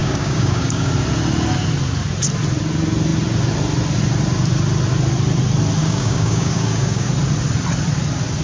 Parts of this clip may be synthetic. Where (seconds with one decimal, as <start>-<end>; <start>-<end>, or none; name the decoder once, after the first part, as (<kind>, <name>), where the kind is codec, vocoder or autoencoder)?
0.0-0.9 (codec, DAC); 5.8-7.1